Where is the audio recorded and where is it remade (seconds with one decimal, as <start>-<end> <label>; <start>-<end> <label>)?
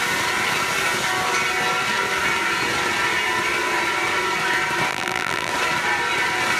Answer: 0.0-4.9 recorded; 4.9-5.5 remade; 5.5-6.6 recorded